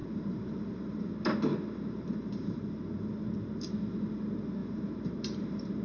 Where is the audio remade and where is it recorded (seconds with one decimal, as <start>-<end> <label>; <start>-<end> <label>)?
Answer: 0.0-1.1 remade; 1.1-1.5 recorded; 1.5-3.1 remade; 3.1-4.6 recorded; 4.6-5.8 remade